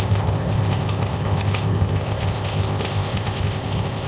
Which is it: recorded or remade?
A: remade